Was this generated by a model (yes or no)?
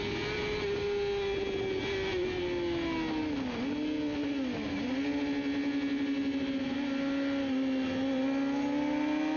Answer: no